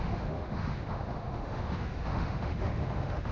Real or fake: fake